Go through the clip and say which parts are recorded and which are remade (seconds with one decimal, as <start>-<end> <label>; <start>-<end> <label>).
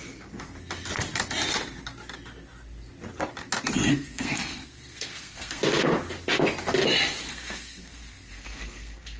0.0-3.9 recorded; 3.9-5.6 remade; 5.6-7.3 recorded; 7.3-9.2 remade